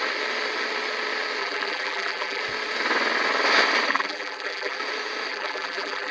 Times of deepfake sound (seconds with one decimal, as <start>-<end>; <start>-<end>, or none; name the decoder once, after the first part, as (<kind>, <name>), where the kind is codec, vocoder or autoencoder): 1.4-2.4 (vocoder, BigVGAN v2); 3.9-4.8; 5.3-6.1